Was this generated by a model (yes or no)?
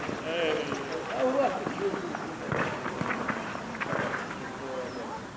no